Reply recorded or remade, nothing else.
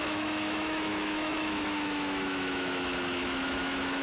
remade